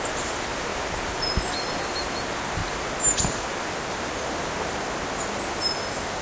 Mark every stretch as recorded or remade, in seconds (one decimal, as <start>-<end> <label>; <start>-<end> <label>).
0.0-6.2 recorded